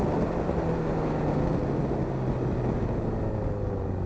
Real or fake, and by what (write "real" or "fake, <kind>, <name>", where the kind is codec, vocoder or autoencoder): real